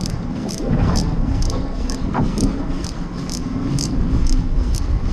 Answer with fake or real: fake